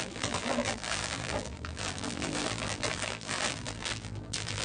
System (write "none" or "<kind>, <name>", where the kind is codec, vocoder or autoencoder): vocoder, BigVGAN v2